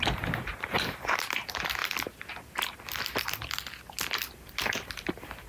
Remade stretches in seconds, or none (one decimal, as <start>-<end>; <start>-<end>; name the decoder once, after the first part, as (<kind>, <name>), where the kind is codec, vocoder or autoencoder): 0.0-1.8 (vocoder, BigVGAN v2); 5.1-5.5